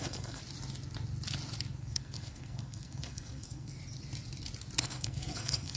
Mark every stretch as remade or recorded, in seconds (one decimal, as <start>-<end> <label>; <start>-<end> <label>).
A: 0.0-0.4 remade; 0.4-1.8 recorded; 1.8-3.8 remade; 3.8-4.8 recorded; 4.8-5.8 remade